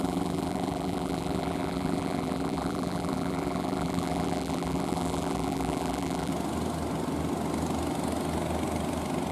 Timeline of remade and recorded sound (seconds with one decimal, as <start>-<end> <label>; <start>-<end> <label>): 0.0-6.3 remade; 6.3-9.3 recorded